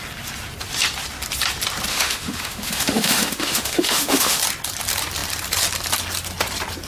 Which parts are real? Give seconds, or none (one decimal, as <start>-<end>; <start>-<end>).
0.0-1.9; 4.4-6.9